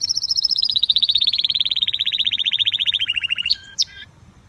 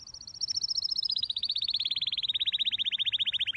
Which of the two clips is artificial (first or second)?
first